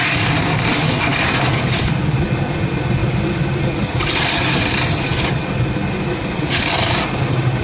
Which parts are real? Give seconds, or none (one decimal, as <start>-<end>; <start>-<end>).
0.0-7.6